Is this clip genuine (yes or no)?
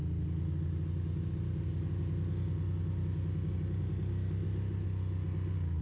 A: yes